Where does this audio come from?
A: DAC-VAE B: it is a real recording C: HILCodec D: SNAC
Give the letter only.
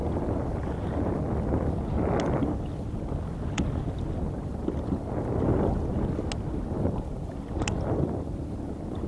B